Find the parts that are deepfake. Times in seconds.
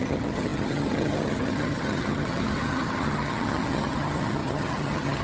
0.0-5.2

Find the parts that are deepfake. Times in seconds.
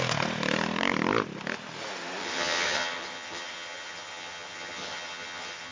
2.2-5.7